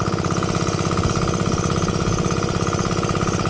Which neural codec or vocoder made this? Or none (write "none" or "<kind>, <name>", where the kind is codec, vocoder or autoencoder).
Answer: none